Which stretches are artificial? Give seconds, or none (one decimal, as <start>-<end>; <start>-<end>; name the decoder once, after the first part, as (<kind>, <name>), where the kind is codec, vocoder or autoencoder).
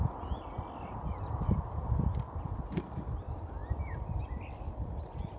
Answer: none